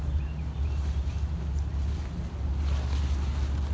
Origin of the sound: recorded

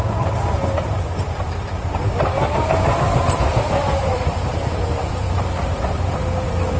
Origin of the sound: remade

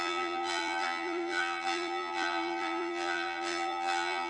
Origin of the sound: remade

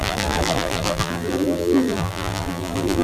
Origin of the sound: remade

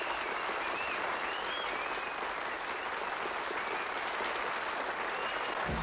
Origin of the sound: recorded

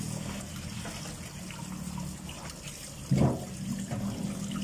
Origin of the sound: recorded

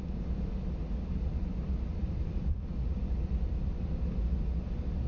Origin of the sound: recorded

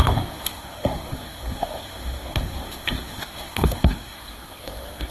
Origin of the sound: remade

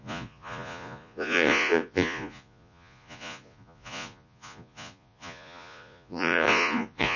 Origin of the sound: remade